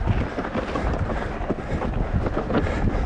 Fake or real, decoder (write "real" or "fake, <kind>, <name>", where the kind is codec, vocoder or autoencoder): real